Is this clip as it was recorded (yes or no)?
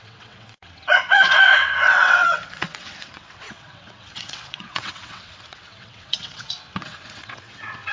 no